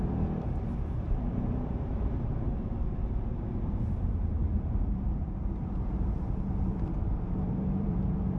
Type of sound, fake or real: fake